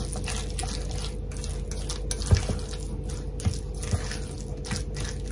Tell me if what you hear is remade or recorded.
recorded